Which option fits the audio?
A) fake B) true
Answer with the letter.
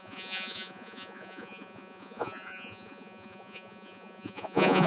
A